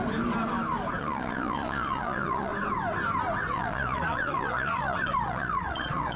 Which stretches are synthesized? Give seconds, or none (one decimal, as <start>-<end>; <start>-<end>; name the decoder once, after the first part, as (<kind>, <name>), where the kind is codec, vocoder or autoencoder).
1.0-2.5 (vocoder, Vocos); 3.5-6.2